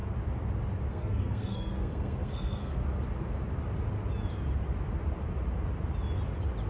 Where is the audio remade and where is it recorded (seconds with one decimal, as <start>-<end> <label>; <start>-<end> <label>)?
0.0-0.9 recorded; 0.9-2.8 remade; 2.8-6.7 recorded